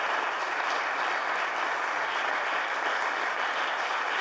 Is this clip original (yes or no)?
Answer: no